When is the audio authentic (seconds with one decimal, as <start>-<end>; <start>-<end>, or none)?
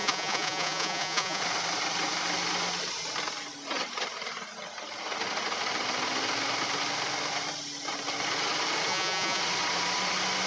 1.4-8.9; 9.4-10.5